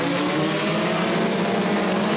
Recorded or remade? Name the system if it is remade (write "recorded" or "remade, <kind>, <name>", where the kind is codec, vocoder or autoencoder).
recorded